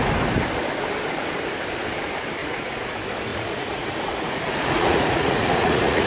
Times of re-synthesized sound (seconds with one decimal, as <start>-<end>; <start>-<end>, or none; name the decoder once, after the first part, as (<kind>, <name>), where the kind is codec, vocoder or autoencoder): 2.4-2.9 (vocoder, Vocos); 3.3-6.1